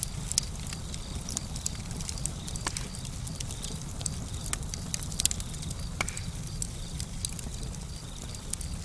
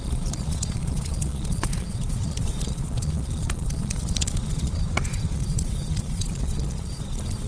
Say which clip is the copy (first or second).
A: second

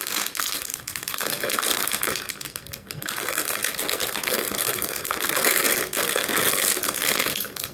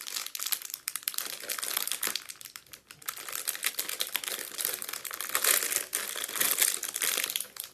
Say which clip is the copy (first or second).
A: first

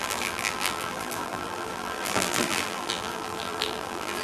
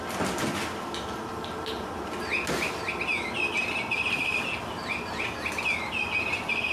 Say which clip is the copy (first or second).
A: first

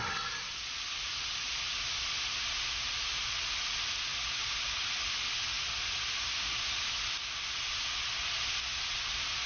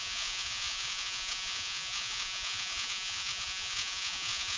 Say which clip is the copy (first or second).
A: second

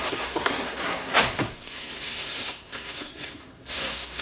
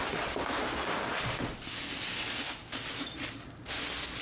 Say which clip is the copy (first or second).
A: first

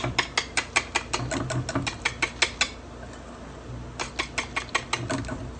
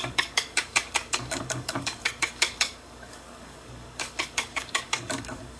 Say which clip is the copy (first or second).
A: second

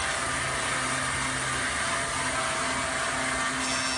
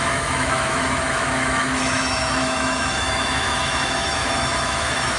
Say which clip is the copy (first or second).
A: second